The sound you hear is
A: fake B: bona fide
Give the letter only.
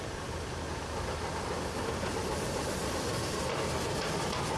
B